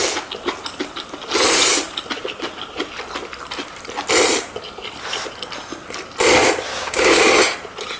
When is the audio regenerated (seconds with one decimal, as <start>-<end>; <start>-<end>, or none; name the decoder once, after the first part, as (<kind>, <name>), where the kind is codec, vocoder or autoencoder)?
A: 6.7-7.3 (codec, DAC)